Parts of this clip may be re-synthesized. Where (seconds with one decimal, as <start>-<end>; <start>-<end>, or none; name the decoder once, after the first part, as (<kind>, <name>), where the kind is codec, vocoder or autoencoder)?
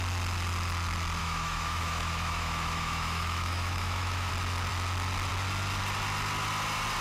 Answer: 1.2-4.3 (autoencoder, DAC-VAE)